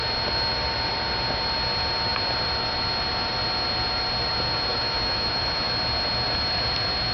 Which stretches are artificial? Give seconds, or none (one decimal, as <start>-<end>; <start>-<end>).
4.7-5.7